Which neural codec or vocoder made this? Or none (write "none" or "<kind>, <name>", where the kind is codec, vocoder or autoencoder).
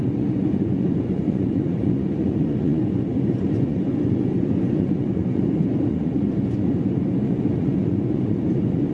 vocoder, Vocos